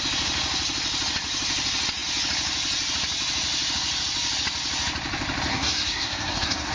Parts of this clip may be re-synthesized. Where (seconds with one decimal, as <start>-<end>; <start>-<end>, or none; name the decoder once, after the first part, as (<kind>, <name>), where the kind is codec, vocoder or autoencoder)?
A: 5.5-6.7 (codec, SNAC)